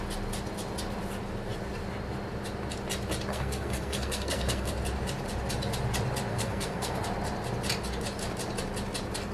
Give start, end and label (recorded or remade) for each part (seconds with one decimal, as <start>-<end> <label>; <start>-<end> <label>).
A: 0.0-3.3 recorded; 3.3-4.8 remade; 4.8-6.3 recorded; 6.3-7.0 remade; 7.0-9.3 recorded